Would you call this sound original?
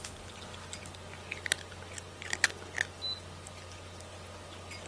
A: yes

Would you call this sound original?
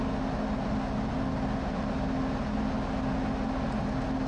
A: yes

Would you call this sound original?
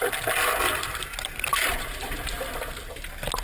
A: yes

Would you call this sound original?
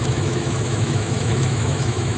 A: no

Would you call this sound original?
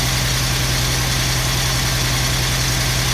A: yes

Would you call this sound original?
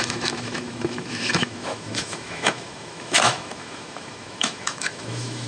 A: no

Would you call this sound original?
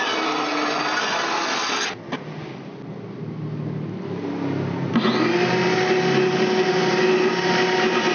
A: yes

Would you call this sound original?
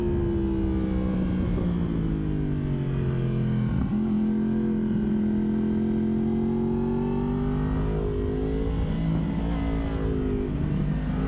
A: yes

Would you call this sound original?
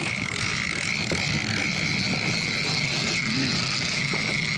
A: yes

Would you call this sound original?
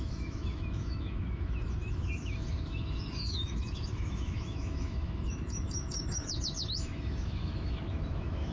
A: no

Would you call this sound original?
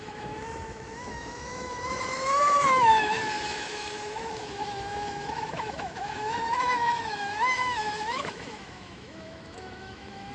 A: no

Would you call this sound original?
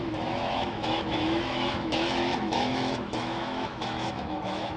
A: no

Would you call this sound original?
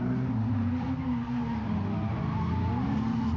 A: yes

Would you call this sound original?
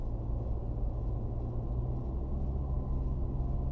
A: yes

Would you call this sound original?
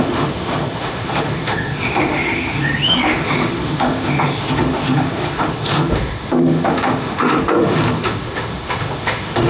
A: no